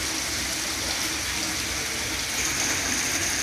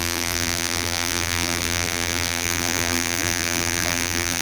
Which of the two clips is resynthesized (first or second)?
second